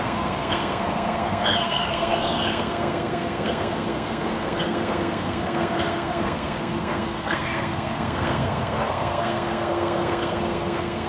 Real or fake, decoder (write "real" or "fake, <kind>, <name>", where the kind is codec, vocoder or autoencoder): fake, codec, SNAC